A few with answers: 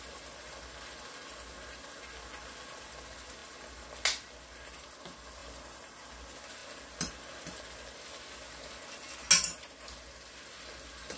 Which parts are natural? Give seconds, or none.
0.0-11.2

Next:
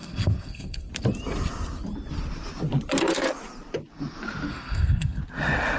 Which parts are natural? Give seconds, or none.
0.9-4.5; 5.2-5.8

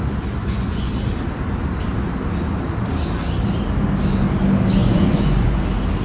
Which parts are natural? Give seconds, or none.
0.0-0.4; 0.9-4.8; 5.6-6.0

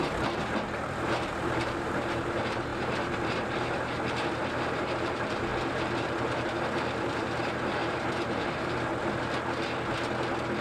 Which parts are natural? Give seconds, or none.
5.5-6.0; 8.9-10.6

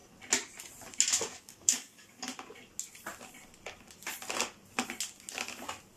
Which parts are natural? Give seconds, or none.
0.0-1.3; 2.3-6.0

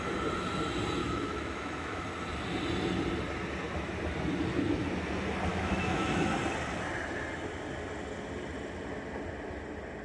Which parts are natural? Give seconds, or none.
0.0-1.0; 2.0-5.5; 6.4-10.0

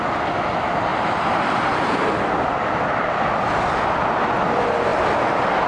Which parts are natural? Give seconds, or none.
0.0-0.9; 2.9-4.9